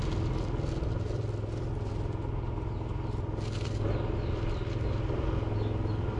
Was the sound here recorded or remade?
recorded